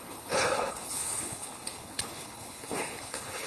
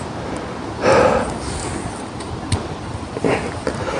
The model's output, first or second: first